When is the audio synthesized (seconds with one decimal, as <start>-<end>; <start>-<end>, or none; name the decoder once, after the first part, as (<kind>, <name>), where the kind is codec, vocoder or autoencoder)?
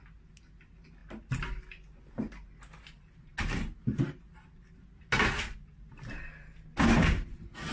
none